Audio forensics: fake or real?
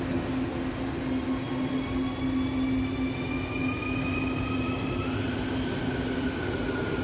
real